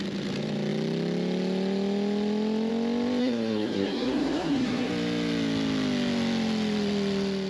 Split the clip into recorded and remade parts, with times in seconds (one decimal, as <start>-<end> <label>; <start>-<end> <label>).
0.0-3.2 recorded; 3.2-4.9 remade; 4.9-7.5 recorded